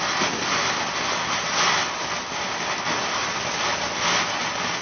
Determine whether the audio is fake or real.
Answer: real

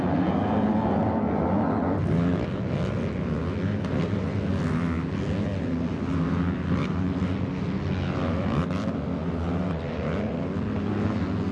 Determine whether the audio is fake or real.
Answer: real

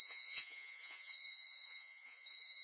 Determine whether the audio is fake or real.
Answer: fake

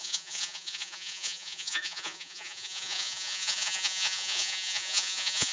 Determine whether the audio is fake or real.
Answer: fake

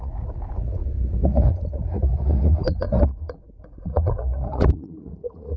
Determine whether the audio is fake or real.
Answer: fake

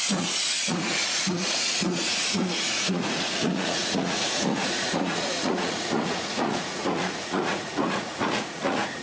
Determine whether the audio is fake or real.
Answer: fake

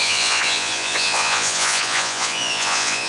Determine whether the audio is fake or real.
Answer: fake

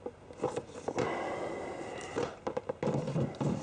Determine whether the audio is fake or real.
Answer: real